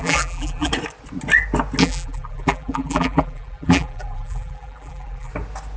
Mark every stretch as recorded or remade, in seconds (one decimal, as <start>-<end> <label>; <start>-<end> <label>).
0.0-0.7 remade; 0.7-1.8 recorded; 1.8-5.3 remade; 5.3-5.8 recorded